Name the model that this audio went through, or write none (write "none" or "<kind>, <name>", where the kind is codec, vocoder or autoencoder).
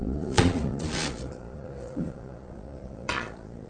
vocoder, Vocos